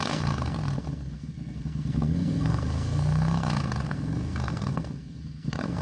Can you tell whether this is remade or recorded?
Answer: remade